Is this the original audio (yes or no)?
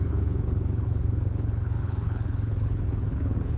no